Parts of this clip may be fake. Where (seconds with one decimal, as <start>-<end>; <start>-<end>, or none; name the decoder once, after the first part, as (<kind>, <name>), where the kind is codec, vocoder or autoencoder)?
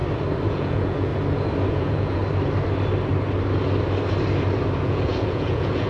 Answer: 0.5-1.1 (vocoder, Vocos); 1.7-2.2; 4.8-5.9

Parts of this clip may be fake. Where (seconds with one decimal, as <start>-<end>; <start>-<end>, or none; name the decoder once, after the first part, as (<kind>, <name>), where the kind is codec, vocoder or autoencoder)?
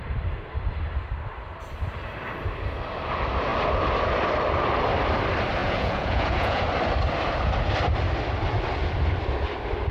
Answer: 5.6-6.6 (vocoder, Vocos)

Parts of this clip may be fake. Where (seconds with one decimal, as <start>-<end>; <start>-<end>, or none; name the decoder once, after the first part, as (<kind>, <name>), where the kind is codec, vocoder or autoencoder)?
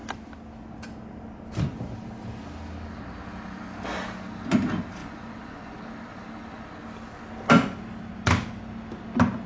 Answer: 5.0-5.8 (vocoder, Vocos)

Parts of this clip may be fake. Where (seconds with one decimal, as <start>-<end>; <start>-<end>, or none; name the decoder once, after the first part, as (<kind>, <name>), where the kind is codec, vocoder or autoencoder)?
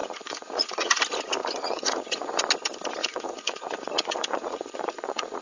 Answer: 0.0-1.0 (vocoder, Vocos); 1.4-2.4; 3.0-5.4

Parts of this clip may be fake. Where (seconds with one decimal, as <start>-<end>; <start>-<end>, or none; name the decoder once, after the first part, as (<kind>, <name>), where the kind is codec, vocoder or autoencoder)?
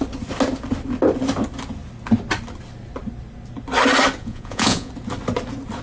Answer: 4.2-4.9 (vocoder, Vocos)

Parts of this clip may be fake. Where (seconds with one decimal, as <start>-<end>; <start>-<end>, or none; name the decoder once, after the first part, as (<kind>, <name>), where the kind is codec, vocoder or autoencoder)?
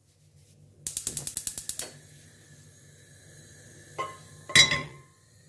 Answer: 4.8-5.5 (vocoder, Vocos)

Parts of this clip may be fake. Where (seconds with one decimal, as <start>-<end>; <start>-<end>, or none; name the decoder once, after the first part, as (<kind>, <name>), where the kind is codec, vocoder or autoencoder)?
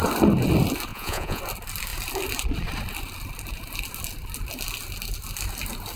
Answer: 0.9-1.4 (vocoder, Vocos)